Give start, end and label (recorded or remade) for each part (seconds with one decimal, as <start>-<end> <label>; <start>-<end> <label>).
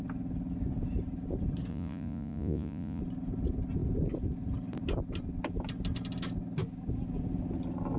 0.0-1.7 recorded; 1.7-3.0 remade; 3.0-8.0 recorded